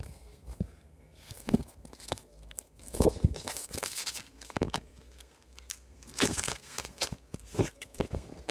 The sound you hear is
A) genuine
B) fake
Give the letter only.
B